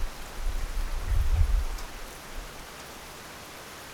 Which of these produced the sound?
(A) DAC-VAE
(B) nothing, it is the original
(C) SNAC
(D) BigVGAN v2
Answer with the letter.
B